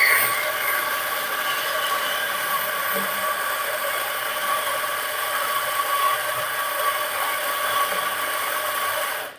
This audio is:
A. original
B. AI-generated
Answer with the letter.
B